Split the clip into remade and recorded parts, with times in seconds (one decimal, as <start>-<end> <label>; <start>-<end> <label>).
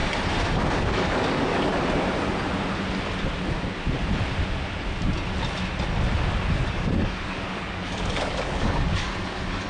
0.0-0.8 recorded; 0.8-1.7 remade; 1.7-6.5 recorded; 6.5-9.7 remade